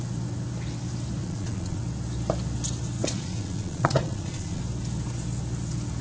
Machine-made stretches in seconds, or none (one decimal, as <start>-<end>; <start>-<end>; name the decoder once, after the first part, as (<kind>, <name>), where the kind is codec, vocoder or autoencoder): 1.2-1.8 (vocoder, Vocos); 3.0-4.6